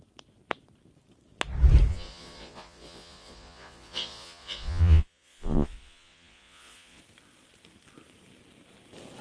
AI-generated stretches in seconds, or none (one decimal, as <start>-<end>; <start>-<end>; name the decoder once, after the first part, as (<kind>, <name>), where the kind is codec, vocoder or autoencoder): 1.9-7.0 (vocoder, Vocos)